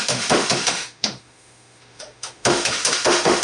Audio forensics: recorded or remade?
remade